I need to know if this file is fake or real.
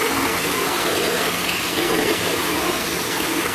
fake